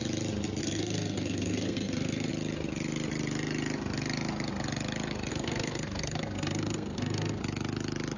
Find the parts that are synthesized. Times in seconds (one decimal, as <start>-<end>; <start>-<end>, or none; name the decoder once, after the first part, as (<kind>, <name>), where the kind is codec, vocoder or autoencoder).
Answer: 0.6-2.3 (codec, SNAC); 5.3-7.4